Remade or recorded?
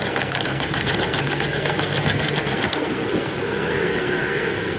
remade